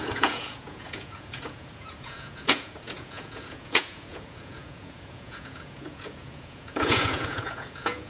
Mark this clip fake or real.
fake